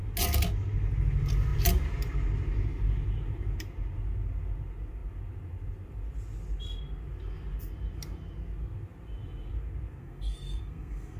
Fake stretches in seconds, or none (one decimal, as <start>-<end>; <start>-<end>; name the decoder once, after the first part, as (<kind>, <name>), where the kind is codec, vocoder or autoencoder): 10.0-11.2 (codec, SNAC)